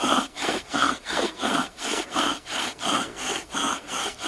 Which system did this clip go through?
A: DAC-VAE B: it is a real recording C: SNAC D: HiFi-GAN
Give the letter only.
C